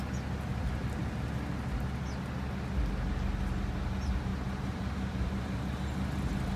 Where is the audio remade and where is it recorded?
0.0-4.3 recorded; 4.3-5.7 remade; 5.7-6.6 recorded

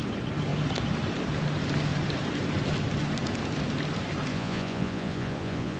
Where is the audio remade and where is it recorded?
0.0-4.3 recorded; 4.3-5.8 remade

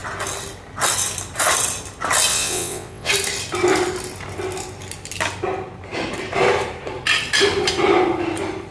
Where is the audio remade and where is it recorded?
0.0-2.3 recorded; 2.3-3.1 remade; 3.1-8.7 recorded

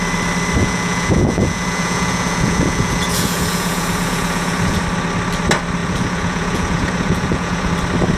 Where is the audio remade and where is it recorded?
0.0-0.6 recorded; 0.6-4.8 remade; 4.8-5.8 recorded; 5.8-7.7 remade; 7.7-8.2 recorded

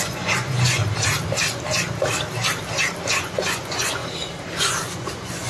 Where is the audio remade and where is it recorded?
0.0-0.8 remade; 0.8-3.1 recorded; 3.1-4.0 remade; 4.0-4.6 recorded; 4.6-5.5 remade

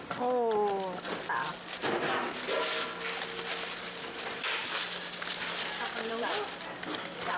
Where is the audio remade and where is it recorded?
0.0-7.4 recorded

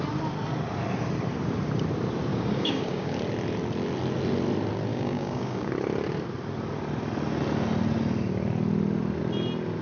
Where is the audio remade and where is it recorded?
0.0-2.3 recorded; 2.3-3.2 remade; 3.2-4.9 recorded; 4.9-5.7 remade; 5.7-9.8 recorded